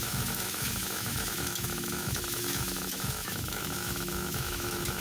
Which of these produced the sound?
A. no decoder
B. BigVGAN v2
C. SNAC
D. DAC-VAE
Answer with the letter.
D